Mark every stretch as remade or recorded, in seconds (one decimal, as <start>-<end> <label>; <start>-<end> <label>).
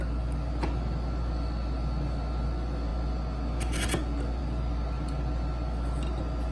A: 0.0-6.5 recorded